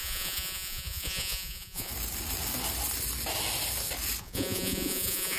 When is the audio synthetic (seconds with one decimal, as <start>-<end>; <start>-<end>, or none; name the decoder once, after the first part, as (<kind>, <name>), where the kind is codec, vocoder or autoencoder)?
0.0-1.9 (vocoder, Vocos); 4.2-5.4